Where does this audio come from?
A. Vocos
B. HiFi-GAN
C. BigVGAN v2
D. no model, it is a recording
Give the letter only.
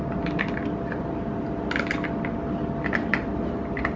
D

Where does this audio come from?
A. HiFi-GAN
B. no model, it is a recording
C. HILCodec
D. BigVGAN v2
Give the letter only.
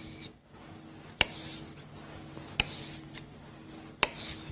B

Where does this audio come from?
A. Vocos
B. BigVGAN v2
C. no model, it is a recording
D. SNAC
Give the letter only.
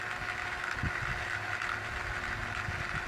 C